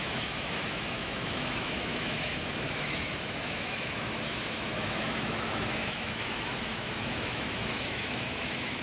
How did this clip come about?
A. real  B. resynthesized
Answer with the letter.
B